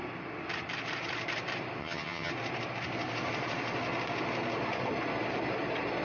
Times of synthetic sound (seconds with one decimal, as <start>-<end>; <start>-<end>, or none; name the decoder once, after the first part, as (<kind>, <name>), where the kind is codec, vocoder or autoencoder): 1.8-2.3 (vocoder, HiFi-GAN)